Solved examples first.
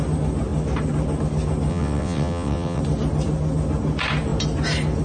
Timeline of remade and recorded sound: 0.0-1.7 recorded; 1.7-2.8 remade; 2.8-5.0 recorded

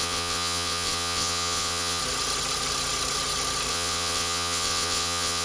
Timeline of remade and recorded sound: 0.0-2.0 remade; 2.0-3.7 recorded; 3.7-5.4 remade

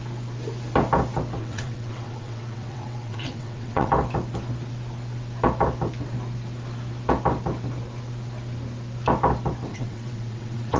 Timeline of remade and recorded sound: 0.0-1.4 recorded; 1.4-3.9 remade; 3.9-9.7 recorded; 9.7-10.8 remade